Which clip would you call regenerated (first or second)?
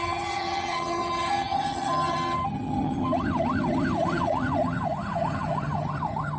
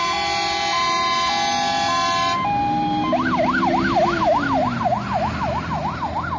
first